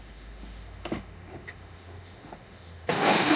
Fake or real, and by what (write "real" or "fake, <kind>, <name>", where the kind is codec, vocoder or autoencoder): fake, autoencoder, DAC-VAE